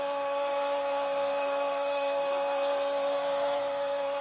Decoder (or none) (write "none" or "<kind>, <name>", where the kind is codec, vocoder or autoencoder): codec, SNAC